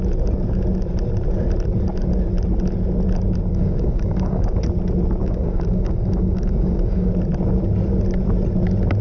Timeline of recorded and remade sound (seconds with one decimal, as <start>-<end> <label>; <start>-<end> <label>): 0.0-3.5 recorded; 3.5-4.6 remade; 4.6-5.2 recorded; 5.2-7.1 remade; 7.1-9.0 recorded